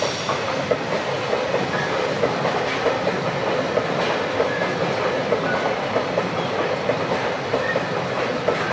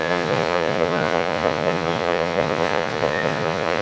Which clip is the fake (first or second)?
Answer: second